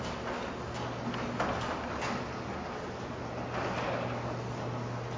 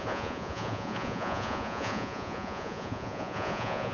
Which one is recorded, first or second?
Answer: first